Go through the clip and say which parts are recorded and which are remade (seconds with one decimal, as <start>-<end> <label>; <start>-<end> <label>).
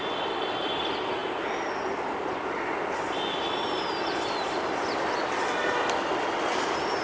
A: 0.0-7.0 recorded